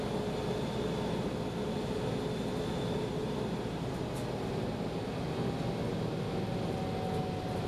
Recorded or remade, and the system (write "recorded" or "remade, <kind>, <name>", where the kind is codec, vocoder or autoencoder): recorded